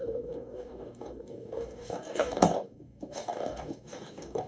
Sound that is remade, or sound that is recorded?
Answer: remade